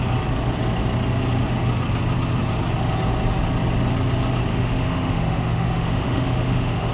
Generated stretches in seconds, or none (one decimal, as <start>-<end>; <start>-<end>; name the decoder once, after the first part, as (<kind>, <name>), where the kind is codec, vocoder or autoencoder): 4.5-6.9 (autoencoder, DAC-VAE)